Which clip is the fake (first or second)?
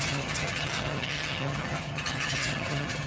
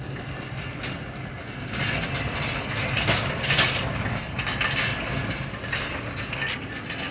first